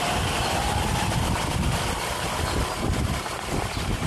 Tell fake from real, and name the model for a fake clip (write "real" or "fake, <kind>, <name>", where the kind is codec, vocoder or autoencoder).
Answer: real